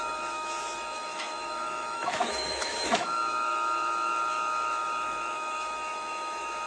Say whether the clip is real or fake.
fake